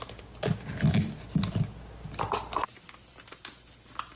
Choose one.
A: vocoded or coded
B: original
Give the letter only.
B